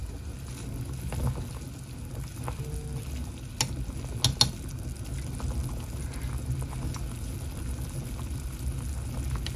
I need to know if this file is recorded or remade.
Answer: recorded